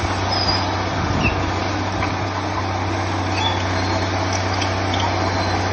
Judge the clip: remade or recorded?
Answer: recorded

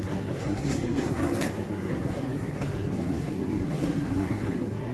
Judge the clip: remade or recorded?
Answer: remade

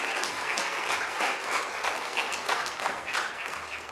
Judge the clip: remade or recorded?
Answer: remade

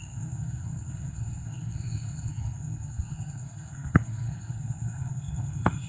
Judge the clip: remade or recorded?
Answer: remade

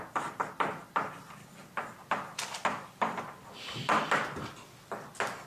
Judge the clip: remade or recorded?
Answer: recorded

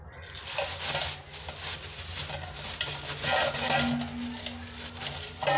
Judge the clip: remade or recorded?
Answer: recorded